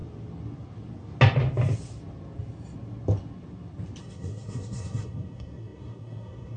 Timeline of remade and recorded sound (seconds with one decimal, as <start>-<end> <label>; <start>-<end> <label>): 0.0-4.0 recorded; 4.0-6.6 remade